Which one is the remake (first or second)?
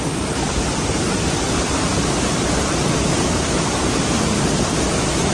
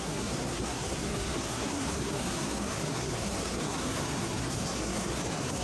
second